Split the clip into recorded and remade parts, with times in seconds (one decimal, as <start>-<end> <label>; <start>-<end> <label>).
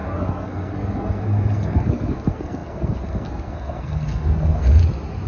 0.0-4.8 remade; 4.8-5.3 recorded